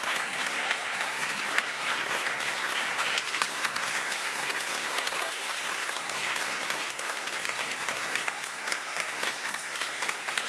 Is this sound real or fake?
fake